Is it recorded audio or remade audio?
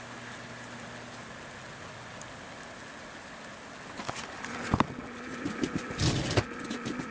recorded